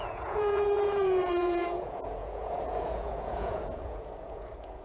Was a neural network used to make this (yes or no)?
yes